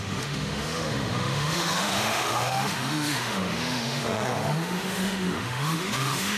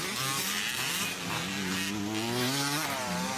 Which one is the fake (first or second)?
first